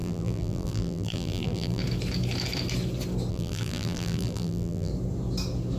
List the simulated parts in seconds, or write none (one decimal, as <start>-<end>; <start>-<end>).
0.0-1.8; 3.3-4.9